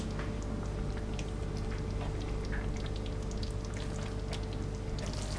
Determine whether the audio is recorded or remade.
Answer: recorded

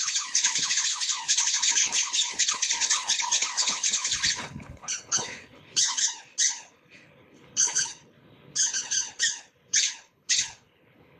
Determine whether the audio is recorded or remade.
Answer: remade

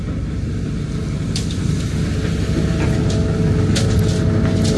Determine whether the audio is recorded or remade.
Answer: recorded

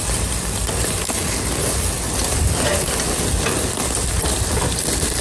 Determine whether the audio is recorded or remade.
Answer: recorded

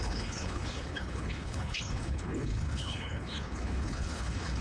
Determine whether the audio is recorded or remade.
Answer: remade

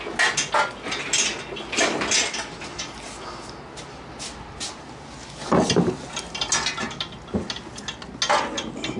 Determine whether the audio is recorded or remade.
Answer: recorded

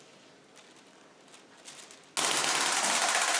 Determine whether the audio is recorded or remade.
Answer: recorded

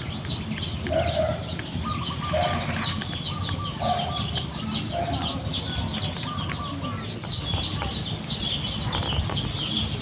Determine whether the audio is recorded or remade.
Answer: recorded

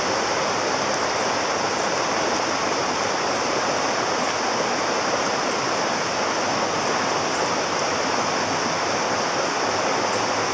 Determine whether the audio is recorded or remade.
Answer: recorded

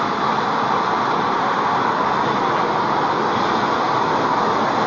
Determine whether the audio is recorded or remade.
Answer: recorded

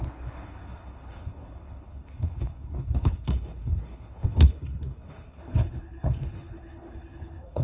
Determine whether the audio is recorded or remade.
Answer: remade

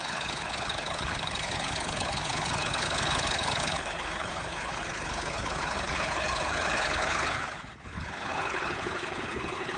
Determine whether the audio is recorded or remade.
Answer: remade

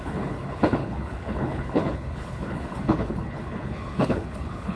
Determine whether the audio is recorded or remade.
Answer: remade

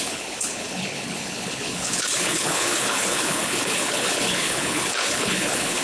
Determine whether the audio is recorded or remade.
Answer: remade